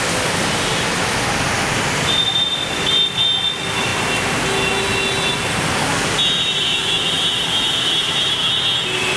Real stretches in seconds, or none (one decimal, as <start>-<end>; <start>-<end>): 0.0-9.2